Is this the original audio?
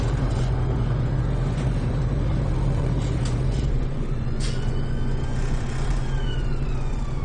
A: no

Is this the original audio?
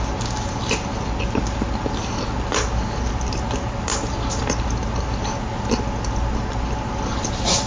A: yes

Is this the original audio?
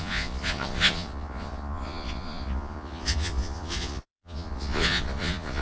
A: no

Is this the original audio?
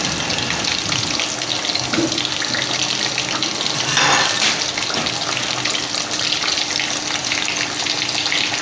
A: yes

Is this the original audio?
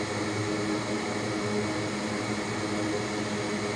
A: yes